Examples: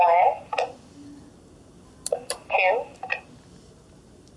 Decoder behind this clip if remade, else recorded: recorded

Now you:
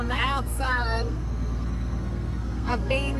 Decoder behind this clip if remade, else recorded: remade, codec, SNAC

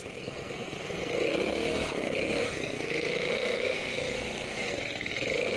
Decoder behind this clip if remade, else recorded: remade, codec, SNAC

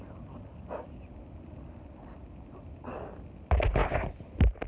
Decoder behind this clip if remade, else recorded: recorded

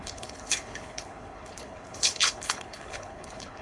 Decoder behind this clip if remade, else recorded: remade, codec, HILCodec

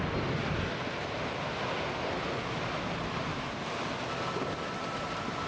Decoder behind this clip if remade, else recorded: recorded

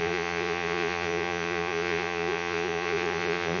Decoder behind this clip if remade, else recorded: remade, vocoder, Vocos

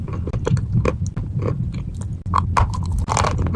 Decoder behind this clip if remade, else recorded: recorded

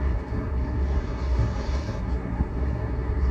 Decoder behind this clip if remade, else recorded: remade, codec, SNAC